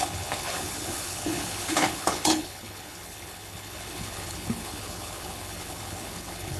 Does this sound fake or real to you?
fake